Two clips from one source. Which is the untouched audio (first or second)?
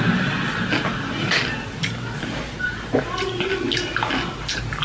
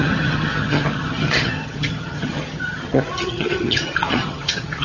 first